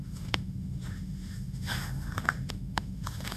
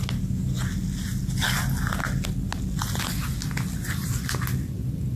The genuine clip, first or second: second